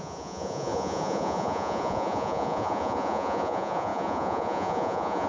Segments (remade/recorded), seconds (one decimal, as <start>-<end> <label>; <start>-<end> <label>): 0.0-5.3 remade